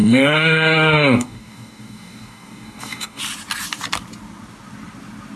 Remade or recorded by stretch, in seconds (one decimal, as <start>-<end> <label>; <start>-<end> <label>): 0.0-3.2 remade; 3.2-5.4 recorded